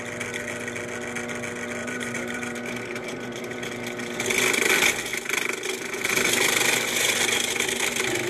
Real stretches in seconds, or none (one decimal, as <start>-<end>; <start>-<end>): 0.0-1.8; 3.7-8.3